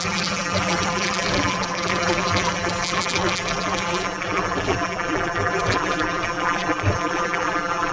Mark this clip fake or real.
fake